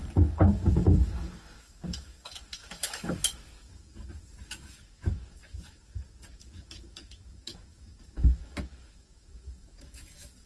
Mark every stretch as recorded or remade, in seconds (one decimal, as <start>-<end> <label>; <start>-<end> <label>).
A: 0.0-10.5 remade